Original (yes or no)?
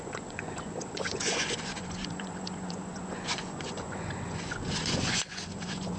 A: no